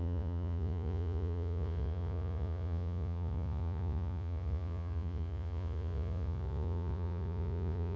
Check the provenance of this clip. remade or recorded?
remade